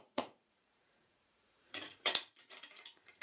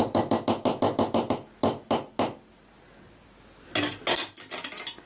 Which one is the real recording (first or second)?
second